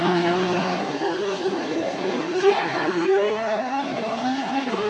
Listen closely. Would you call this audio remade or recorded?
remade